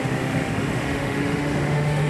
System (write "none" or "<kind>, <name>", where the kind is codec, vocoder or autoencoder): autoencoder, DAC-VAE